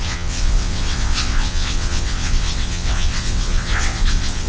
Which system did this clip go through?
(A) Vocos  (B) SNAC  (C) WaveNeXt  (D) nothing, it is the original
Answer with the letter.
C